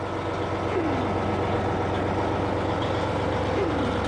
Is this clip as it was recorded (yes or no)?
yes